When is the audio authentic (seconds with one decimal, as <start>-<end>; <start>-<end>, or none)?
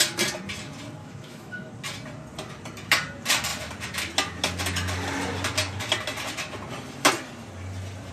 0.0-1.0; 1.7-8.1